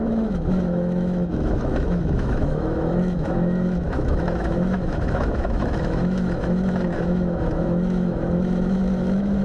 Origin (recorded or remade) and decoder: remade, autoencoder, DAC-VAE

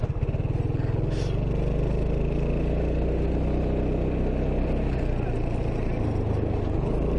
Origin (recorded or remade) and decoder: recorded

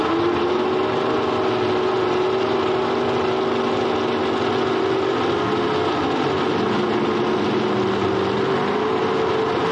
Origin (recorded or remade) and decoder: recorded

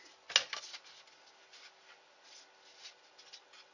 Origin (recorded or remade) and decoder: recorded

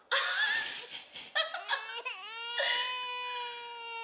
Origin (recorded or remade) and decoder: recorded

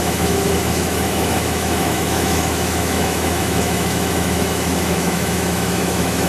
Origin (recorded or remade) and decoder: remade, autoencoder, DAC-VAE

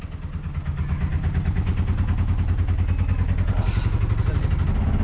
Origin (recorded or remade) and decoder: recorded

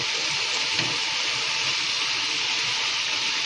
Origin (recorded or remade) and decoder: remade, vocoder, BigVGAN v2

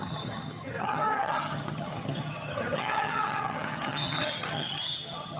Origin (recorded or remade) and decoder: remade, vocoder, HiFi-GAN